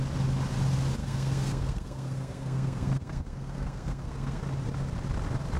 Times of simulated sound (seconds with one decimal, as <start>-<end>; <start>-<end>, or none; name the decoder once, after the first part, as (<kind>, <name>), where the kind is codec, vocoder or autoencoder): 1.0-4.4 (codec, SNAC)